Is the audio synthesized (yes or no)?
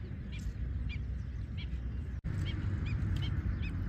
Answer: no